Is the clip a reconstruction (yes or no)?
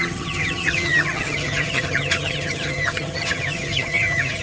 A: yes